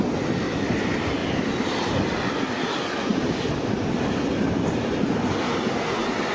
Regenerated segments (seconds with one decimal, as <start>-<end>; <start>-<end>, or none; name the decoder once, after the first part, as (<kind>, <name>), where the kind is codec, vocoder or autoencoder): none